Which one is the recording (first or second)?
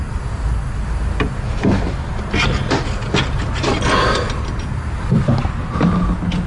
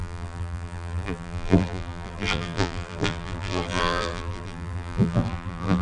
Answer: first